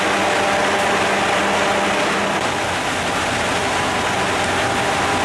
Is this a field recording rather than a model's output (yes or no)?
yes